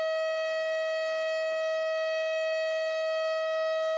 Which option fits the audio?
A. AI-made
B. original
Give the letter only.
A